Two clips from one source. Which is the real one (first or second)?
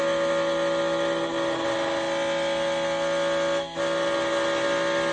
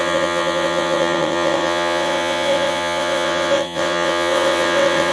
first